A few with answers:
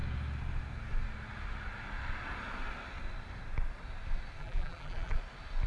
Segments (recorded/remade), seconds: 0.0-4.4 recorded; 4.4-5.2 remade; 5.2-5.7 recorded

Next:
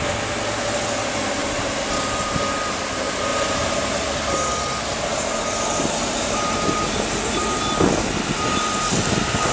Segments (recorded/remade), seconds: 0.0-1.4 recorded; 1.4-2.9 remade; 2.9-3.3 recorded; 3.3-7.6 remade; 7.6-9.5 recorded

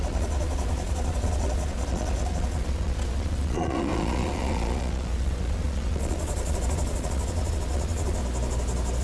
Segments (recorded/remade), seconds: 0.0-8.2 remade; 8.2-9.0 recorded

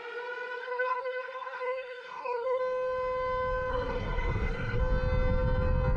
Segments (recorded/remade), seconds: 0.0-0.6 recorded; 0.6-2.6 remade; 2.6-3.7 recorded; 3.7-4.8 remade; 4.8-6.0 recorded

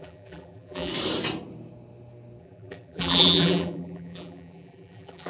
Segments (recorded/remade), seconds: 0.0-0.9 remade; 0.9-2.4 recorded; 2.4-5.3 remade

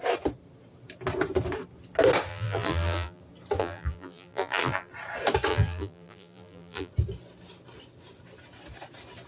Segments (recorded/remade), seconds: 0.0-2.3 recorded; 2.3-3.2 remade; 3.2-3.6 recorded; 3.6-4.9 remade; 4.9-5.5 recorded; 5.5-6.9 remade; 6.9-9.3 recorded

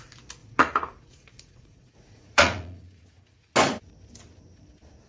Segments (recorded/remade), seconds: 0.0-0.4 recorded; 0.4-3.5 remade; 3.5-5.1 recorded

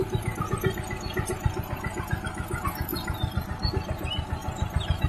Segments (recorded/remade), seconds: 0.0-4.4 recorded; 4.4-5.1 remade